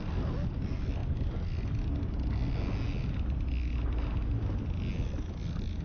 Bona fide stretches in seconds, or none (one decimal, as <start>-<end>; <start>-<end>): 0.0-5.8